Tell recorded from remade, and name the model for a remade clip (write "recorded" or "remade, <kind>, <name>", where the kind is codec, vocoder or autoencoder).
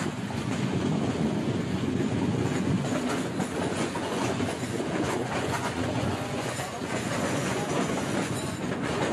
remade, vocoder, Vocos